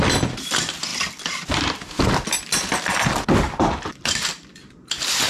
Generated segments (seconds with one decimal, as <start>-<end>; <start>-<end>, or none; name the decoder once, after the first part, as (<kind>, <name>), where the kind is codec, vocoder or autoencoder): 0.0-5.3 (vocoder, BigVGAN v2)